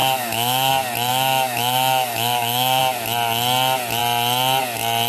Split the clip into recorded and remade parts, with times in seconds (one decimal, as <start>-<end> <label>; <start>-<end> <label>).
0.0-0.7 remade; 0.7-1.1 recorded; 1.1-2.8 remade; 2.8-5.1 recorded